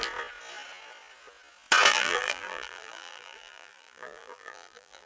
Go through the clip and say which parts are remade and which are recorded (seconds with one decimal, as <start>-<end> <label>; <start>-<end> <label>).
0.0-1.9 recorded; 1.9-5.1 remade

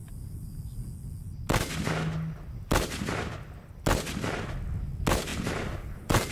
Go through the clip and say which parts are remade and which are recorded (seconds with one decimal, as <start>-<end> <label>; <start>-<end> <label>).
0.0-5.3 recorded; 5.3-6.3 remade

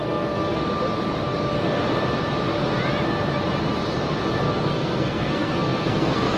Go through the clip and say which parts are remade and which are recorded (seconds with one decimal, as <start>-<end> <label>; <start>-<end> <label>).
0.0-0.6 remade; 0.6-4.4 recorded; 4.4-6.4 remade

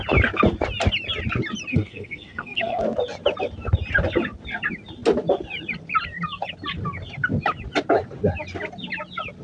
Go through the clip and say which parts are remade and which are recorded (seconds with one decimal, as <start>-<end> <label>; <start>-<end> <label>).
0.0-1.7 recorded; 1.7-2.8 remade; 2.8-9.4 recorded

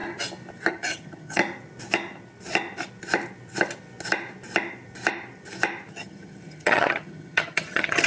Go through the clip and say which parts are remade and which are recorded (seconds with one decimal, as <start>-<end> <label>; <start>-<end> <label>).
0.0-0.7 recorded; 0.7-1.4 remade; 1.4-5.9 recorded; 5.9-8.1 remade

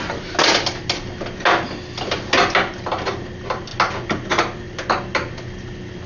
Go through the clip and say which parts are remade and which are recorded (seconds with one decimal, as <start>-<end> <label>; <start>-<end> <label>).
0.0-6.1 recorded